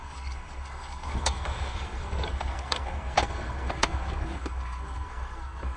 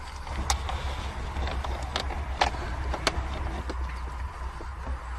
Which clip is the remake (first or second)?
first